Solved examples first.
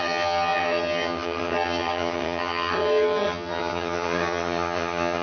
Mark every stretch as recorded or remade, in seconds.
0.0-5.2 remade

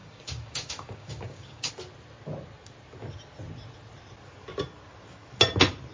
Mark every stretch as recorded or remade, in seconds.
0.0-1.7 remade; 1.7-5.9 recorded

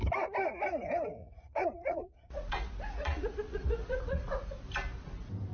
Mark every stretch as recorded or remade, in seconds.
0.0-1.2 recorded; 1.2-4.5 remade; 4.5-5.5 recorded

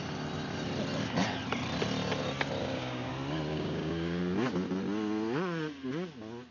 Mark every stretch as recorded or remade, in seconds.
0.0-2.6 recorded; 2.6-3.1 remade; 3.1-3.5 recorded; 3.5-4.2 remade; 4.2-6.5 recorded

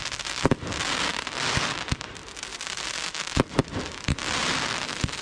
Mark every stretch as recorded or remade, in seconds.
0.0-5.2 remade

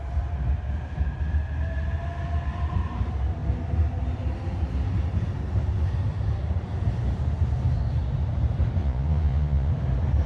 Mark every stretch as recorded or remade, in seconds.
0.0-8.8 recorded; 8.8-9.7 remade; 9.7-10.3 recorded

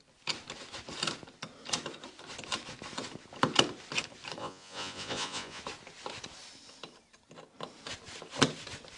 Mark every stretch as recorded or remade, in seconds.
0.0-4.4 recorded; 4.4-5.6 remade; 5.6-9.0 recorded

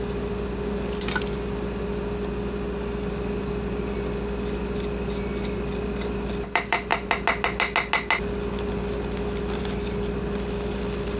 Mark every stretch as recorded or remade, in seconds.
0.0-6.9 remade; 6.9-9.6 recorded; 9.6-11.2 remade